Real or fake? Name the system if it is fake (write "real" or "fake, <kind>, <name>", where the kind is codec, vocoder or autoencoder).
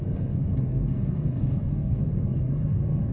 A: fake, codec, SNAC